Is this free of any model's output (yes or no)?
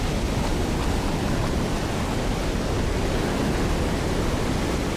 yes